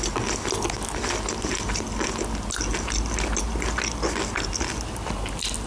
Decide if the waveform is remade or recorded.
recorded